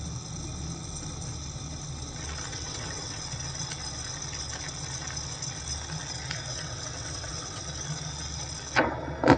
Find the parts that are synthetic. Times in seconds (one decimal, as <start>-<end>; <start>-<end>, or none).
2.5-3.2; 6.5-7.6